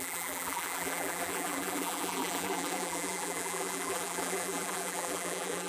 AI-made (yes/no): yes